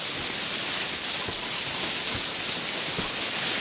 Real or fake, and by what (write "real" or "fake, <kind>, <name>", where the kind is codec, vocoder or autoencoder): real